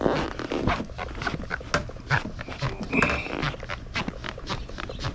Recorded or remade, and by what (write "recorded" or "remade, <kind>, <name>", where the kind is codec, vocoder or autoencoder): recorded